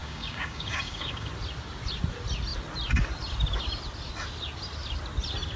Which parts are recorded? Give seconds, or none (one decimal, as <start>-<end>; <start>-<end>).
1.3-5.6